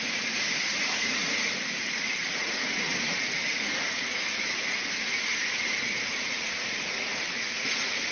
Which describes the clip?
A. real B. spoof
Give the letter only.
B